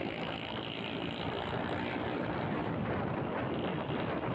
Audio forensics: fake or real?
real